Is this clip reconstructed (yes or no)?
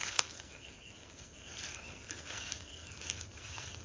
yes